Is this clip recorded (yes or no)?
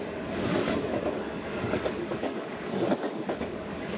no